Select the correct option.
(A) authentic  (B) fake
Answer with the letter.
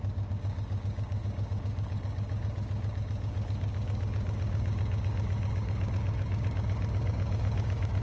B